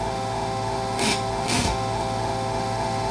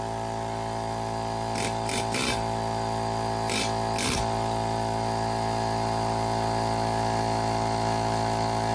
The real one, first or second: second